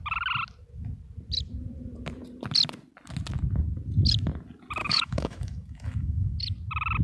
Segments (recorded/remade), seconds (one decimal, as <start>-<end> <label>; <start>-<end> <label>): 0.0-4.8 recorded; 4.8-6.4 remade; 6.4-7.0 recorded